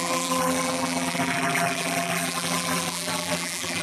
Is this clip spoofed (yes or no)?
yes